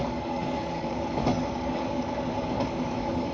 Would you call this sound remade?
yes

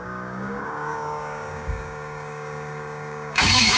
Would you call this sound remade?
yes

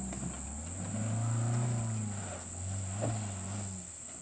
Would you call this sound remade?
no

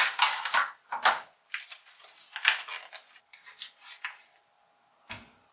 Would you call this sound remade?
no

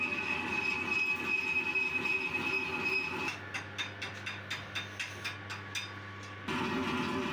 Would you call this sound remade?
no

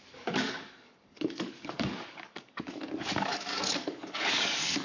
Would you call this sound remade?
yes